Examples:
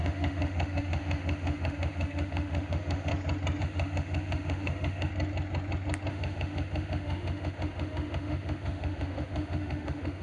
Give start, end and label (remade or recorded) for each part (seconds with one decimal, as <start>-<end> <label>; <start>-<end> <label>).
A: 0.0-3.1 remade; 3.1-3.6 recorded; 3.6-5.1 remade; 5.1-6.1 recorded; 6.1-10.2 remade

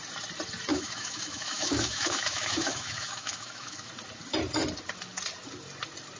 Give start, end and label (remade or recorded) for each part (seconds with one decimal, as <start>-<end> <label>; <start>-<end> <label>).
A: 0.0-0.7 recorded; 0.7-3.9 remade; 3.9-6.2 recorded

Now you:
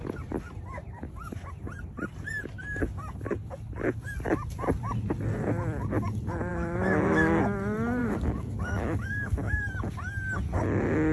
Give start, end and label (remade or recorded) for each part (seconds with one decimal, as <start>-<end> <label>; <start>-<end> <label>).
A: 0.0-6.5 recorded; 6.5-7.4 remade; 7.4-8.0 recorded; 8.0-9.6 remade; 9.6-11.1 recorded

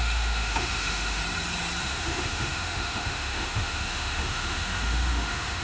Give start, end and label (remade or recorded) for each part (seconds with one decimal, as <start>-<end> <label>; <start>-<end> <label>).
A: 0.0-1.2 remade; 1.2-1.8 recorded; 1.8-5.6 remade